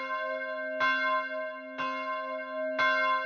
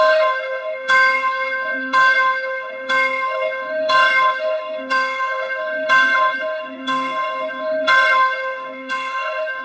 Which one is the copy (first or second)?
second